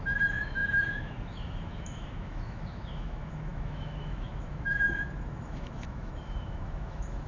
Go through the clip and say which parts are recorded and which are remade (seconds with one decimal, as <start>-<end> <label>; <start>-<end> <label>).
0.0-7.3 remade